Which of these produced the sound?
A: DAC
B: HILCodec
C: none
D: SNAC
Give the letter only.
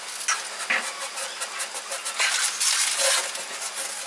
C